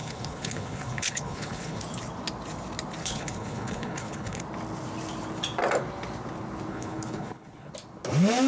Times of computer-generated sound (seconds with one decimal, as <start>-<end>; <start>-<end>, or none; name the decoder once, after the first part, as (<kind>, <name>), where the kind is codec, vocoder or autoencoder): 0.0-1.8 (codec, HILCodec); 3.0-4.4; 6.7-7.7